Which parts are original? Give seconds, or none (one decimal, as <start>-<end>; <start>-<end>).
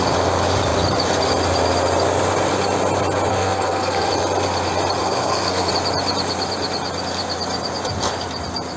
0.0-3.3; 4.1-5.0; 5.7-8.8